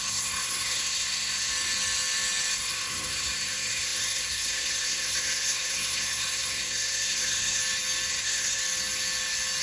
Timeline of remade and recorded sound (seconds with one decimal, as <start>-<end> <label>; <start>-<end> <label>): 0.0-1.5 remade; 1.5-2.5 recorded; 2.5-7.6 remade; 7.6-8.1 recorded; 8.1-8.6 remade; 8.6-9.6 recorded